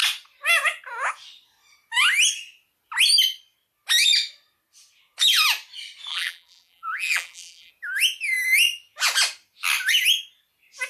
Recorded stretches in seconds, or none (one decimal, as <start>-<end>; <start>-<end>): 0.0-6.1; 7.7-10.9